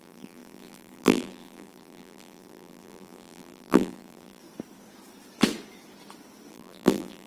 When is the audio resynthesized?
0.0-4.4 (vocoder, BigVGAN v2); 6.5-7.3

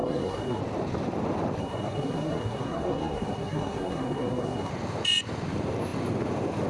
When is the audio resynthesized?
0.0-0.6 (codec, SNAC); 1.6-4.7

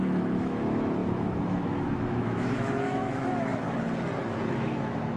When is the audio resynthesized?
0.0-3.5 (autoencoder, DAC-VAE); 4.5-5.2

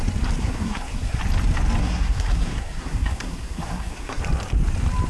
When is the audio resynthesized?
0.4-1.2 (codec, SNAC); 1.8-4.2

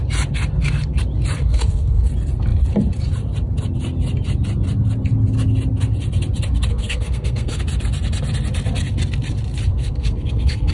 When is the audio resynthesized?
1.4-2.1 (codec, SNAC); 6.7-7.6; 9.7-10.7

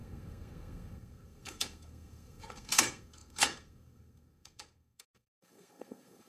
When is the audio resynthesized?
0.0-6.3 (codec, SNAC)

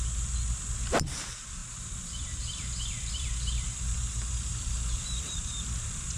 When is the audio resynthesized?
1.6-3.3 (vocoder, BigVGAN v2)

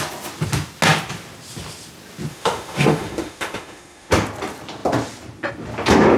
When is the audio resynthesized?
2.3-4.1 (autoencoder, DAC-VAE)